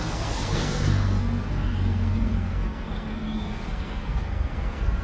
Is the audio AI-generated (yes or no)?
yes